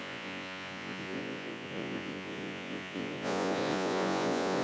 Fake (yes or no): yes